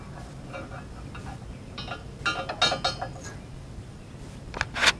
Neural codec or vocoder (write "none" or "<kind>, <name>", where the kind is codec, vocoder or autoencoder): none